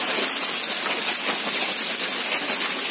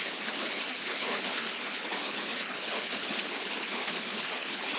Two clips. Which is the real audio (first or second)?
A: first